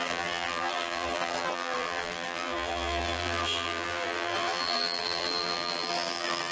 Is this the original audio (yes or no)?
no